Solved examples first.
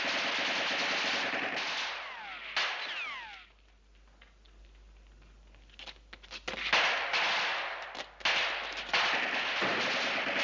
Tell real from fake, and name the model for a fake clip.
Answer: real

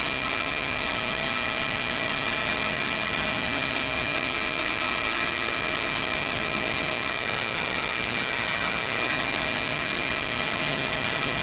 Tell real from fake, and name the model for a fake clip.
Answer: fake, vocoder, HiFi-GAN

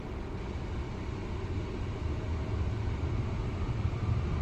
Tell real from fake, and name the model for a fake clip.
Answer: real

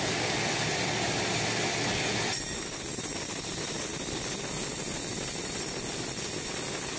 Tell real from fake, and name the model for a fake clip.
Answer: real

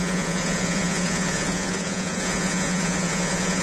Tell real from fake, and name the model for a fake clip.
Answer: fake, vocoder, Vocos